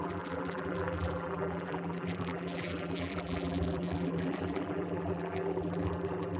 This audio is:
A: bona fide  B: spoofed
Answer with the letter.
B